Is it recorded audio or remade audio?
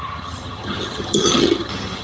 remade